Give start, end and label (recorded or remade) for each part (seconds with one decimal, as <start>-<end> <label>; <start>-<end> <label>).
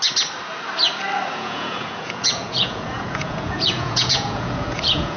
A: 0.0-1.3 recorded; 1.3-5.2 remade